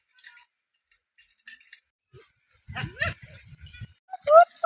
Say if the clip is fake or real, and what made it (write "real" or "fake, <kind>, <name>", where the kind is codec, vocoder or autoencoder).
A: real